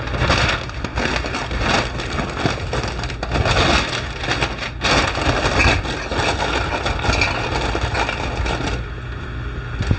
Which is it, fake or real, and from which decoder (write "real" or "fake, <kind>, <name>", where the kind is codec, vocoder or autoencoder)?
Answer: real